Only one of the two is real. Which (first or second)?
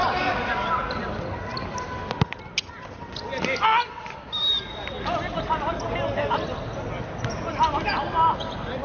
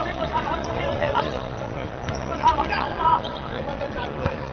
first